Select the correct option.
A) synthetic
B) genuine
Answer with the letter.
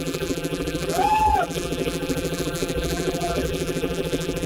A